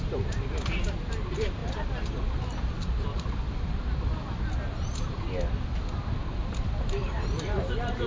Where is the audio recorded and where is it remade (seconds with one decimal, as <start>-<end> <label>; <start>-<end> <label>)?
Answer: 0.0-1.6 remade; 1.6-6.5 recorded; 6.5-8.1 remade